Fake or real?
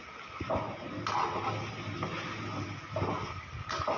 real